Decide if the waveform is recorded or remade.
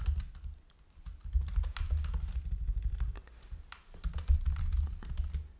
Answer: recorded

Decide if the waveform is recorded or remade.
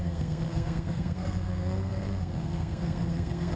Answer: remade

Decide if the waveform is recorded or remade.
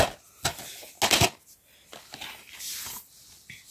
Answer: recorded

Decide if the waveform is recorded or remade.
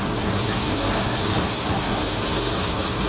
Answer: remade